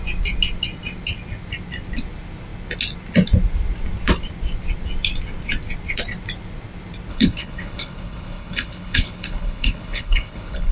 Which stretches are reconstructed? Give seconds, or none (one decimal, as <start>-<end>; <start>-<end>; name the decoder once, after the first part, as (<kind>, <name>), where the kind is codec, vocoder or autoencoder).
7.1-10.7 (codec, HILCodec)